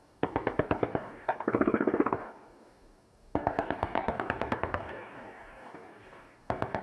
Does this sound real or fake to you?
fake